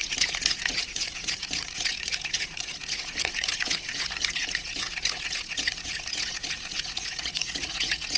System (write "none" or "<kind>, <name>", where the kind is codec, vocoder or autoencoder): vocoder, Vocos